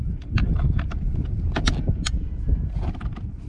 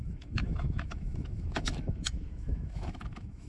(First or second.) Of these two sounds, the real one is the first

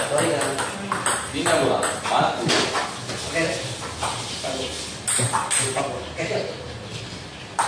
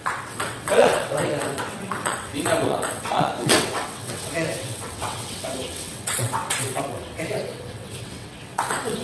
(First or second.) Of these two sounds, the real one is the first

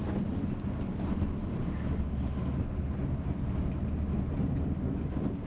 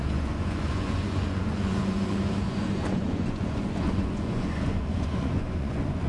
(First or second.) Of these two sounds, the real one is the first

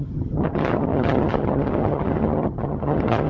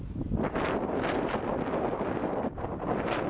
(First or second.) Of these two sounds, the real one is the second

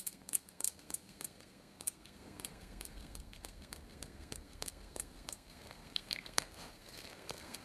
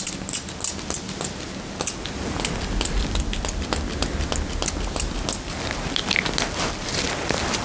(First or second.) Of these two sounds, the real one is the second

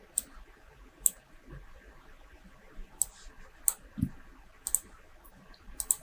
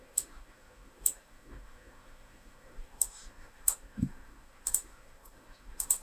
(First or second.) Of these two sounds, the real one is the first